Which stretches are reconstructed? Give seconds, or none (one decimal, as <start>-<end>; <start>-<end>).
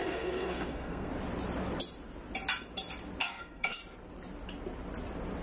0.0-1.1; 3.2-3.8